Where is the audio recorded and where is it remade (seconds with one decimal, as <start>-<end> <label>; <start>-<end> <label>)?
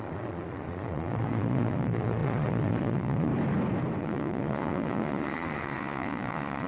0.0-3.3 remade; 3.3-4.0 recorded; 4.0-6.7 remade